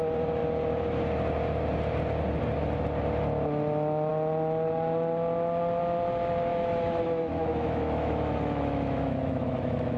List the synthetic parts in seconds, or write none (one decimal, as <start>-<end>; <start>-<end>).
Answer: 6.5-10.0